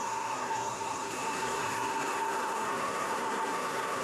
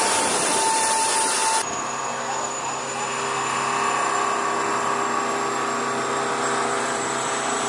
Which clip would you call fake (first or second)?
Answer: first